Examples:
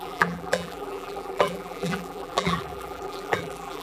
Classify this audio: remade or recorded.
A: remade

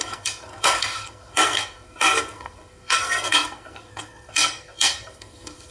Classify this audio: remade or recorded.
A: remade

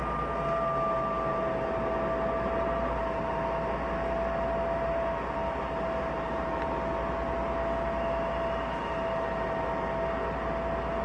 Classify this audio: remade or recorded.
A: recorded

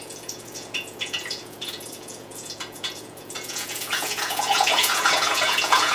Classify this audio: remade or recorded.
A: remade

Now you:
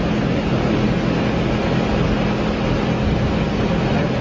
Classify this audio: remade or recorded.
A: recorded